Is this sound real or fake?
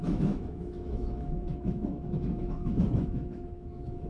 fake